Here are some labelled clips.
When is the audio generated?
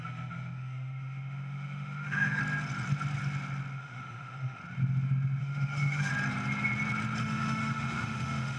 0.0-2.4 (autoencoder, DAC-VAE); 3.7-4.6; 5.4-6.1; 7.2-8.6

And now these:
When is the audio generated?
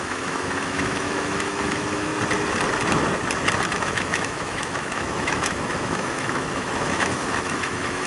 0.0-2.1 (autoencoder, DAC-VAE); 3.8-8.1